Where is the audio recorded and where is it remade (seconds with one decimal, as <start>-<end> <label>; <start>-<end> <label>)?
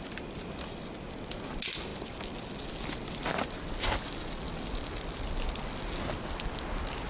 0.0-7.1 recorded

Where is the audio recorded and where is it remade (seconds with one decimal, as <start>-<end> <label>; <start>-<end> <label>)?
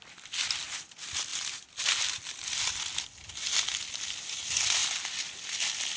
0.0-1.3 recorded; 1.3-2.2 remade; 2.2-6.0 recorded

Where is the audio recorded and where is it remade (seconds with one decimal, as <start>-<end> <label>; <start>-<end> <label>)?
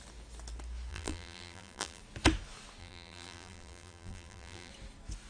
0.0-0.9 recorded; 0.9-2.0 remade; 2.0-2.8 recorded; 2.8-4.7 remade; 4.7-5.3 recorded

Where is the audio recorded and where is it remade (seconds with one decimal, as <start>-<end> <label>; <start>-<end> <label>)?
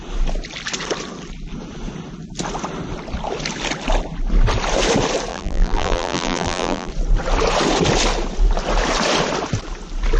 0.0-5.3 recorded; 5.3-6.9 remade; 6.9-10.2 recorded